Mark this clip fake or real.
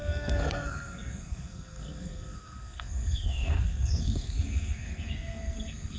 fake